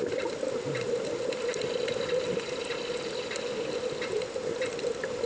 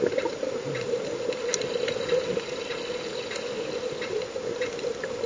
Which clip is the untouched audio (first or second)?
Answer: second